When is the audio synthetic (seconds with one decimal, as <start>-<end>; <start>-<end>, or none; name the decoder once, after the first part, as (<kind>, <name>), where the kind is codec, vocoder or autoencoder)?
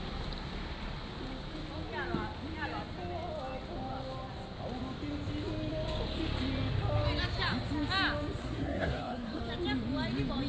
8.4-9.4 (codec, SNAC)